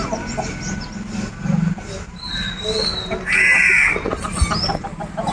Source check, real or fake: real